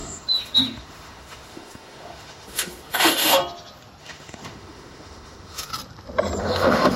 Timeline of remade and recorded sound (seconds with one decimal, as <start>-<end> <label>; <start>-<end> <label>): 0.0-3.4 remade; 3.4-4.0 recorded; 4.0-5.7 remade; 5.7-6.4 recorded; 6.4-7.0 remade